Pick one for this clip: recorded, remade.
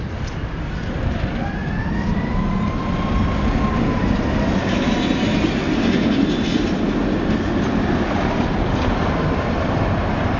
recorded